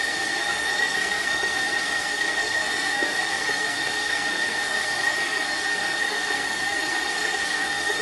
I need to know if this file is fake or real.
fake